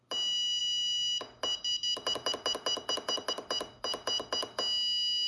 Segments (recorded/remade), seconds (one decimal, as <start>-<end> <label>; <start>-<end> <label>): 0.0-5.3 recorded